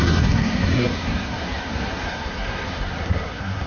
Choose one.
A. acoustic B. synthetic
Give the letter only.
B